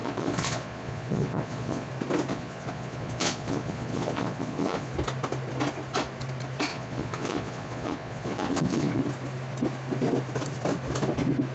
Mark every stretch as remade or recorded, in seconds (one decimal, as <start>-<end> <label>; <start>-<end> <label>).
0.0-1.9 remade; 1.9-2.3 recorded; 2.3-4.9 remade; 4.9-6.7 recorded; 6.7-9.0 remade; 9.0-11.5 recorded